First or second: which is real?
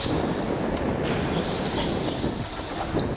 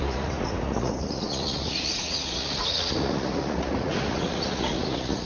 first